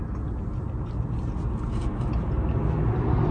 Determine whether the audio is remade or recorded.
recorded